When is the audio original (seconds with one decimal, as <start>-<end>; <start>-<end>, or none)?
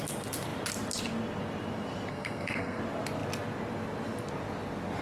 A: 0.0-2.1; 2.8-5.0